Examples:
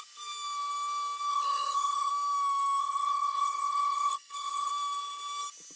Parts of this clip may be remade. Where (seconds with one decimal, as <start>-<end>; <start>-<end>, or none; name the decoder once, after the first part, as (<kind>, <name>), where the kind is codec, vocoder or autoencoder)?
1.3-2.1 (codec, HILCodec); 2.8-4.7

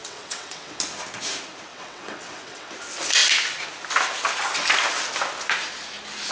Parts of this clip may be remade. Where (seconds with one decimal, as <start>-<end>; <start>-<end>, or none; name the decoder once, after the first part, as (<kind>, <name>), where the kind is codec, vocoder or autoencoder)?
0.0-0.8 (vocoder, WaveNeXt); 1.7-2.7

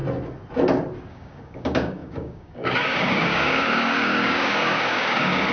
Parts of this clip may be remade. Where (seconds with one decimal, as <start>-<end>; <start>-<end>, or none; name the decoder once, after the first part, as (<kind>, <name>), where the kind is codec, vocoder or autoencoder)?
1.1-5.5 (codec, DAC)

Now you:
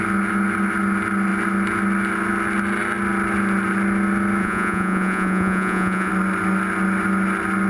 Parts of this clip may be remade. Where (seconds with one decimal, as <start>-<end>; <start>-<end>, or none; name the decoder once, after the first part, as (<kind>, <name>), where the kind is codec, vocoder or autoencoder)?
4.4-6.1 (vocoder, Vocos)